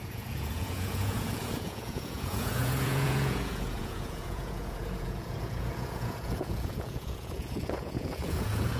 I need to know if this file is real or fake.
fake